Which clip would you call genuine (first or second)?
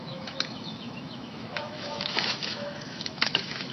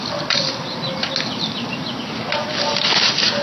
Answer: second